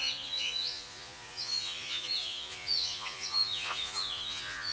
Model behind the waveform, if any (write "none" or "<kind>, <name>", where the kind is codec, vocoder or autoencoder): vocoder, Vocos